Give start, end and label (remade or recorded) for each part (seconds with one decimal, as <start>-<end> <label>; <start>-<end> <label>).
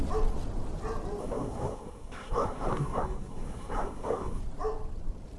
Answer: 0.0-1.2 recorded; 1.2-4.4 remade; 4.4-5.4 recorded